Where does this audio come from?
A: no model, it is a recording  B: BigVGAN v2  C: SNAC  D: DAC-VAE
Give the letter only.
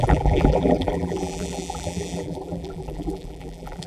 B